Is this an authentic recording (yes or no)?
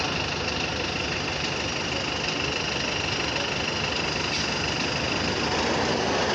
yes